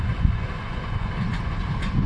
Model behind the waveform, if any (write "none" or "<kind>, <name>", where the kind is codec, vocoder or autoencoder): vocoder, Vocos